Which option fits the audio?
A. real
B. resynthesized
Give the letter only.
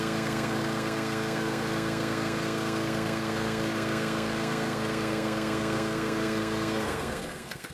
B